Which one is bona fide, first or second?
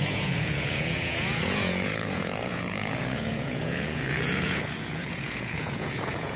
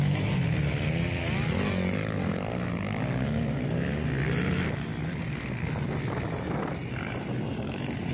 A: second